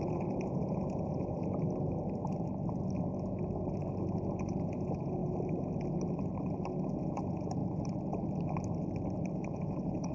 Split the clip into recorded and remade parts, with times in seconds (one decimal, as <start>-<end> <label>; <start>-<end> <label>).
0.0-1.4 remade; 1.4-4.3 recorded; 4.3-5.2 remade; 5.2-7.0 recorded; 7.0-7.6 remade; 7.6-9.3 recorded; 9.3-10.1 remade